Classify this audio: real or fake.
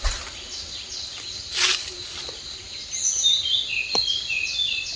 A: real